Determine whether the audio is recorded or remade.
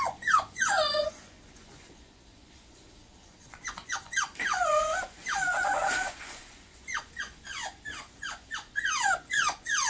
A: remade